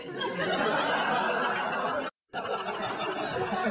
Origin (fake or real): real